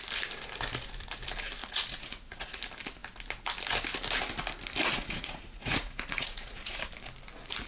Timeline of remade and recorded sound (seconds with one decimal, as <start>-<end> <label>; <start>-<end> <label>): 0.0-1.6 recorded; 1.6-2.6 remade; 2.6-4.8 recorded; 4.8-6.9 remade; 6.9-7.7 recorded